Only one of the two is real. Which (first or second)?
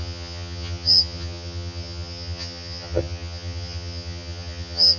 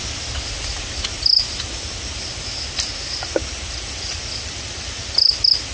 second